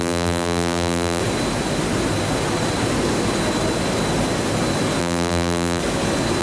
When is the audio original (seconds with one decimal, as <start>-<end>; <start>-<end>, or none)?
1.2-5.0; 5.8-6.4